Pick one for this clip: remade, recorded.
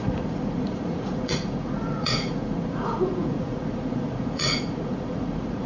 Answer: remade